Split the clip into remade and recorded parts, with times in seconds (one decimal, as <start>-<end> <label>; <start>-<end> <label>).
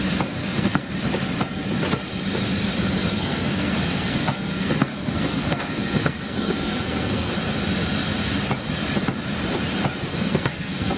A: 0.0-0.4 recorded; 0.4-0.9 remade; 0.9-3.1 recorded; 3.1-7.3 remade; 7.3-10.1 recorded; 10.1-11.0 remade